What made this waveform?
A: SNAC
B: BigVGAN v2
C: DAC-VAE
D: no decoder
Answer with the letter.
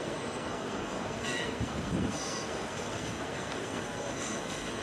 A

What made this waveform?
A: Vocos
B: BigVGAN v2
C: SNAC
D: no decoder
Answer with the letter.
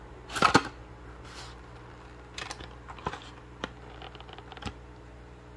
D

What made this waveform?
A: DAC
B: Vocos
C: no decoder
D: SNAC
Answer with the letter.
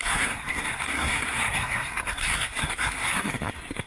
D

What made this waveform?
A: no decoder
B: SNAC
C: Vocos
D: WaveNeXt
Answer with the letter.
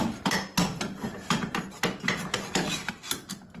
A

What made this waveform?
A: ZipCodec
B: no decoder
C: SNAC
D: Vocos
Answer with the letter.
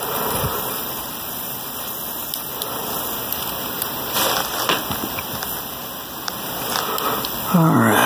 B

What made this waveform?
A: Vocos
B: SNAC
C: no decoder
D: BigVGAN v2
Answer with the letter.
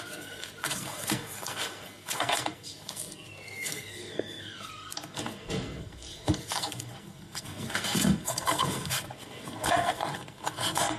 B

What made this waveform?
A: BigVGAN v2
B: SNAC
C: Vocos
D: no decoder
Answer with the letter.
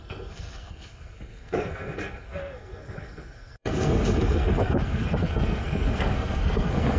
B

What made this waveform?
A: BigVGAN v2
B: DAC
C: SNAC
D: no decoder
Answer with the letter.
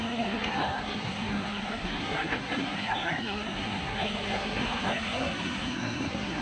C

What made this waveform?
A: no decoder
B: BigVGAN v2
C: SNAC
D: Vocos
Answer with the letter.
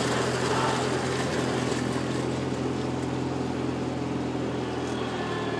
A